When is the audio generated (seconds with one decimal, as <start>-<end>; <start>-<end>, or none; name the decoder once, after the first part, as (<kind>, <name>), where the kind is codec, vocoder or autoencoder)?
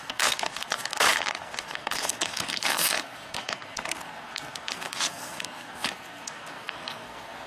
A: 0.0-7.5 (codec, SNAC)